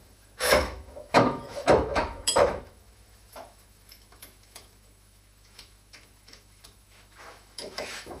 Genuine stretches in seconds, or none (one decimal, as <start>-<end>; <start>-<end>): none